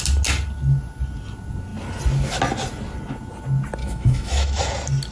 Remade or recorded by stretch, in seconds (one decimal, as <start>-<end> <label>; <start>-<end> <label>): 0.0-3.8 recorded; 3.8-4.6 remade; 4.6-5.1 recorded

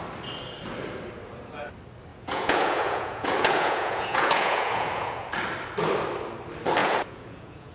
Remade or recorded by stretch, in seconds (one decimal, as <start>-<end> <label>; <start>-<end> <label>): 0.0-2.1 recorded; 2.1-5.3 remade; 5.3-6.8 recorded; 6.8-7.7 remade

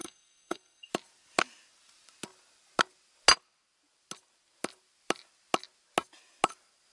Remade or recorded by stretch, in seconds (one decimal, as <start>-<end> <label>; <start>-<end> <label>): 0.0-0.9 remade; 0.9-6.9 recorded

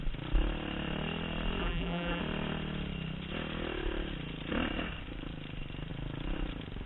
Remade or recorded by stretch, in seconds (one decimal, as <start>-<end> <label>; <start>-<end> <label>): 0.0-1.6 recorded; 1.6-2.2 remade; 2.2-6.9 recorded

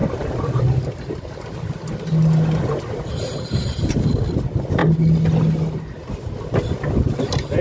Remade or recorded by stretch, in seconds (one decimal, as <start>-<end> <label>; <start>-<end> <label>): 0.0-7.6 recorded

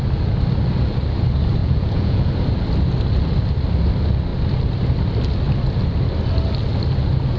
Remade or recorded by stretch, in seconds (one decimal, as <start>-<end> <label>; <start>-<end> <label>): 0.0-1.6 recorded; 1.6-2.3 remade; 2.3-7.4 recorded

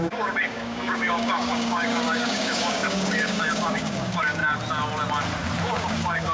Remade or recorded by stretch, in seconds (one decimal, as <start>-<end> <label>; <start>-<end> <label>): 0.0-4.4 remade; 4.4-5.6 recorded; 5.6-6.3 remade

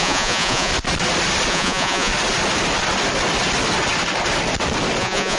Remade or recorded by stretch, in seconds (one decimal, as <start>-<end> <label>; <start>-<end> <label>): 0.0-0.7 remade; 0.7-1.5 recorded; 1.5-2.1 remade; 2.1-5.0 recorded; 5.0-5.4 remade